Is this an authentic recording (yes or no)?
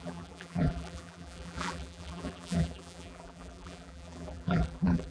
no